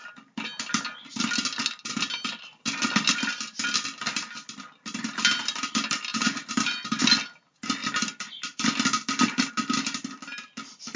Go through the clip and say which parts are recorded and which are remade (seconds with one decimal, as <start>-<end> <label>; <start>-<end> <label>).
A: 0.0-6.1 recorded; 6.1-7.0 remade; 7.0-11.0 recorded